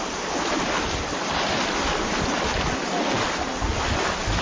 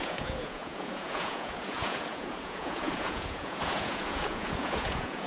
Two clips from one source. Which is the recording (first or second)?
first